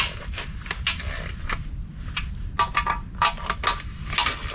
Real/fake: real